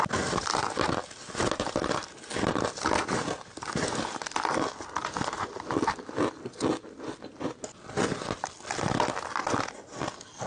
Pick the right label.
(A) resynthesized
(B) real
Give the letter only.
B